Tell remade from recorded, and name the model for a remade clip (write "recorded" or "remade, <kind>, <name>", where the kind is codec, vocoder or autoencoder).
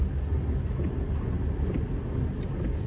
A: recorded